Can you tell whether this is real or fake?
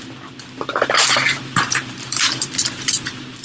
fake